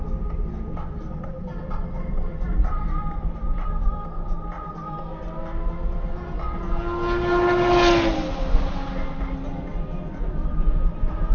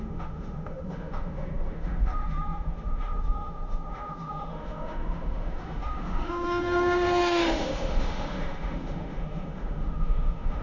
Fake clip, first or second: second